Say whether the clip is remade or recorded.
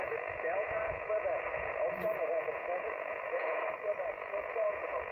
remade